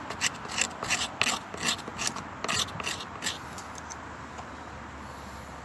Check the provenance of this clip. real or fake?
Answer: real